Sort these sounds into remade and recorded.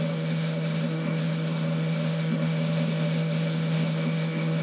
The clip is remade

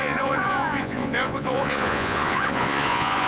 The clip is remade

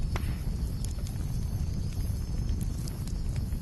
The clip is recorded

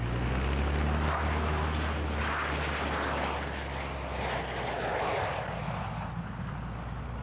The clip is recorded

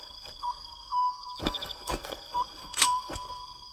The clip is remade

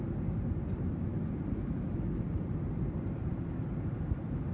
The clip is recorded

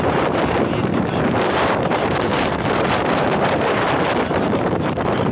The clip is remade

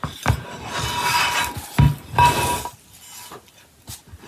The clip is recorded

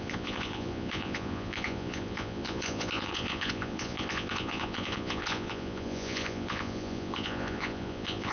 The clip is remade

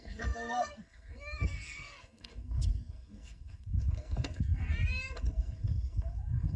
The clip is remade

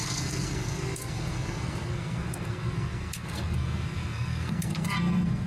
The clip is remade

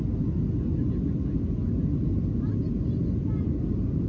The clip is recorded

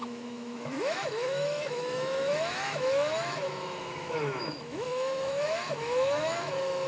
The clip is remade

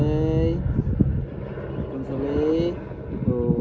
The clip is recorded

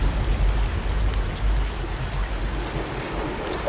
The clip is recorded